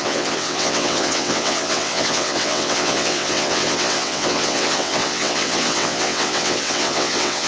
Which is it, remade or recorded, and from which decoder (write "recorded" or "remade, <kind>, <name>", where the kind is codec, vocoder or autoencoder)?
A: remade, vocoder, WaveNeXt